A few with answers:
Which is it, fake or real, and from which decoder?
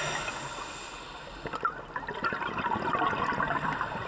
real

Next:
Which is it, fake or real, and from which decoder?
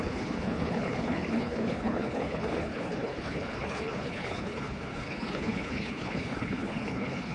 fake, codec, HILCodec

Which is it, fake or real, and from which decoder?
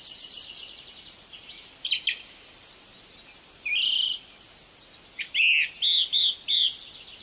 real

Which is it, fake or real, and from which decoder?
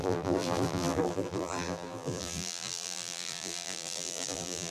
fake, vocoder, BigVGAN v2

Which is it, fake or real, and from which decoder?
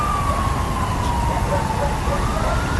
real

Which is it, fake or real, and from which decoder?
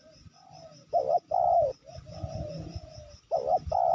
real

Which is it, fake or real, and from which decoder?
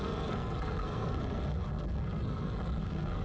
fake, codec, SNAC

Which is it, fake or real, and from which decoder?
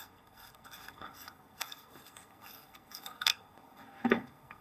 fake, codec, SNAC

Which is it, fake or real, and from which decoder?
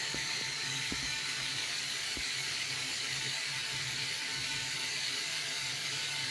fake, codec, DAC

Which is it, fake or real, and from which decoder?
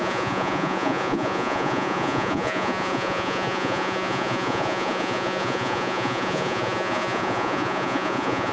fake, vocoder, Vocos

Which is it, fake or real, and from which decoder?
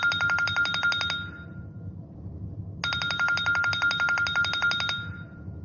real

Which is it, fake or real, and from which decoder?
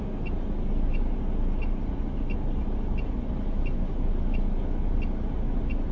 real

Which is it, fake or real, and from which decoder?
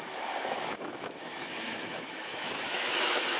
fake, autoencoder, DAC-VAE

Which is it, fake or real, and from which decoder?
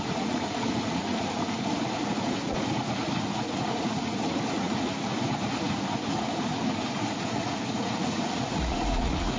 fake, vocoder, Vocos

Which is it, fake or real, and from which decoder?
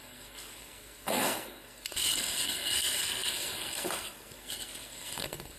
fake, codec, SNAC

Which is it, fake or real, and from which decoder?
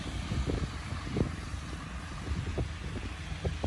real